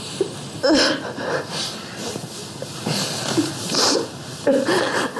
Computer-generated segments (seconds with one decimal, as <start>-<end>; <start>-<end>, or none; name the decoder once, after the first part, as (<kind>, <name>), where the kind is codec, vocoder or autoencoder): none

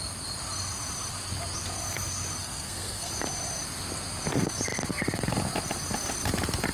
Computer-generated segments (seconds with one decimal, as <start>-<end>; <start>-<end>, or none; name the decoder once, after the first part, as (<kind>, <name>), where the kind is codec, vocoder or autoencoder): 2.4-3.1 (codec, SNAC)

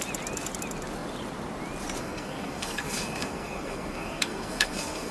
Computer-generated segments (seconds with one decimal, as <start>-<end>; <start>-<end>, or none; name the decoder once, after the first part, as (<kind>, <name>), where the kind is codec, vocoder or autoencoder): 2.0-5.1 (codec, SNAC)